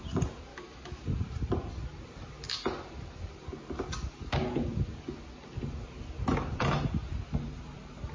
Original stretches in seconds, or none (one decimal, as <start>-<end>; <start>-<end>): 0.0-0.5; 1.0-8.1